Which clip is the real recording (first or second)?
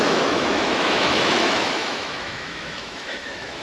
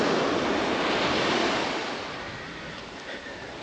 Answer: second